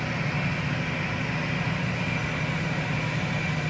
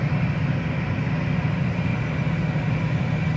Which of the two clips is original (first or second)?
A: first